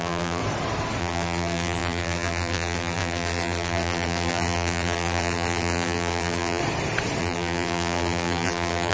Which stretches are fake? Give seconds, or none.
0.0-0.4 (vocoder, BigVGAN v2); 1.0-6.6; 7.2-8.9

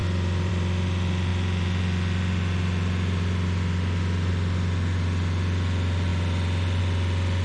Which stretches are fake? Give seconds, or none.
none

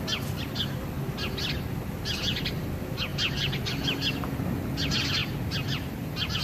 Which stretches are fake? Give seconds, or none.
none

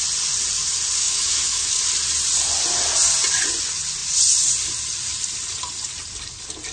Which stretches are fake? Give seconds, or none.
1.0-1.7 (autoencoder, DAC-VAE)

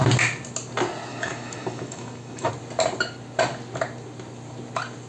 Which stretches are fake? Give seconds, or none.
1.1-2.5 (autoencoder, DAC-VAE)

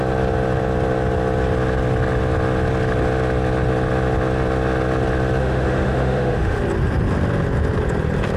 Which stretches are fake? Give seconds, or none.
5.4-6.6 (autoencoder, DAC-VAE)

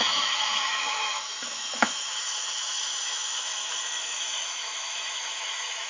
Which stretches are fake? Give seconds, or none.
0.0-5.9 (autoencoder, DAC-VAE)

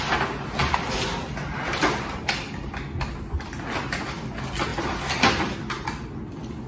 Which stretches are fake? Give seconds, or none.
none